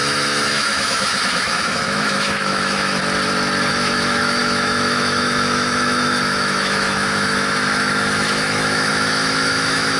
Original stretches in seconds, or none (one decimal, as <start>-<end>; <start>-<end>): 3.0-3.7